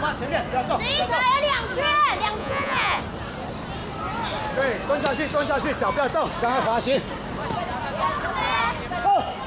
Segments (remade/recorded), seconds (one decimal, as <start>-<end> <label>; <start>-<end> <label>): 0.0-2.4 recorded; 2.4-3.0 remade; 3.0-9.5 recorded